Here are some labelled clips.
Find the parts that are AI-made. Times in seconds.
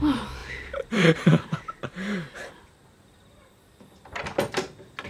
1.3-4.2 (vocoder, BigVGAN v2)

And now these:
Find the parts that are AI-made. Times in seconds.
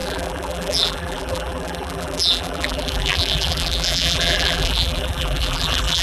0.0-6.0 (vocoder, BigVGAN v2)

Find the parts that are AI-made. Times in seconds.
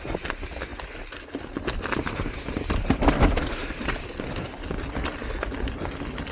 none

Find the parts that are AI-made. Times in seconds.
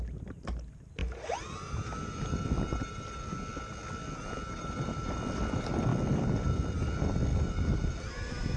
1.0-2.3 (vocoder, BigVGAN v2); 7.3-8.6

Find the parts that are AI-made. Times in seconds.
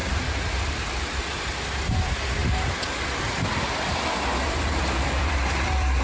2.0-2.4 (vocoder, BigVGAN v2); 3.0-6.0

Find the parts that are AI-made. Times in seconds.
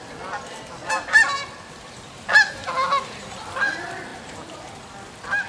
0.8-1.8 (vocoder, BigVGAN v2)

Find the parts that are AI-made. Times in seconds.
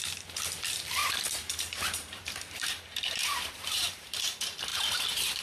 1.0-4.2 (vocoder, BigVGAN v2); 4.7-5.4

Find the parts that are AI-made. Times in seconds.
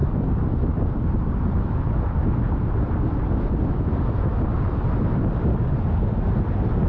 none